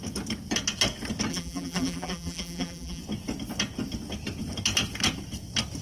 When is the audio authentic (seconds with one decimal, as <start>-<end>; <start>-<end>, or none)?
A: 0.0-1.3; 3.0-5.8